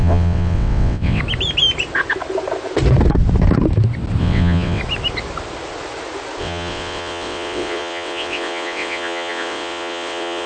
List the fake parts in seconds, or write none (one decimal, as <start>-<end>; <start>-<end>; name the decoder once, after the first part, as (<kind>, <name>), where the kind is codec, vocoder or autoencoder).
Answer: 0.0-1.2 (vocoder, WaveNeXt); 4.2-4.8; 6.4-10.5